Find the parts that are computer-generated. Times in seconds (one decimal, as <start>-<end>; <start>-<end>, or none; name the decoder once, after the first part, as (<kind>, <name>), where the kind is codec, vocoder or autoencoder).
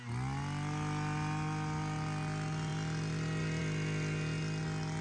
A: none